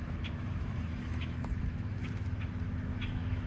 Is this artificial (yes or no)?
yes